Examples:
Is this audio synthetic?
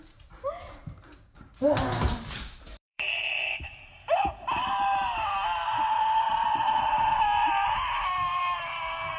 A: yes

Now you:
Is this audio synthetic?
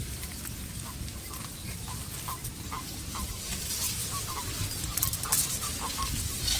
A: no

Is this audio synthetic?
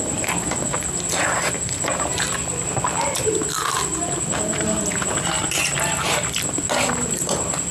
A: no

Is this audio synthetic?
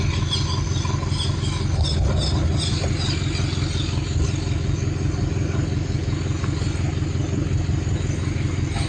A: no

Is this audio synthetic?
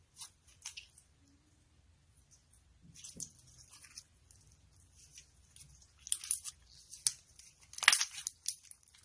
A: no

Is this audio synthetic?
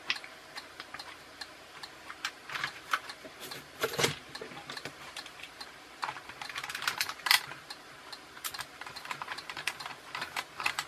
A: yes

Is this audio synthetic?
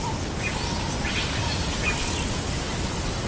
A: no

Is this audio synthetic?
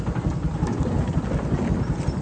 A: no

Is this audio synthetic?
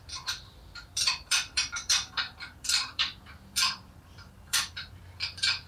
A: yes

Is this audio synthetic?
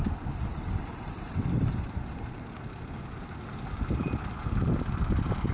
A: no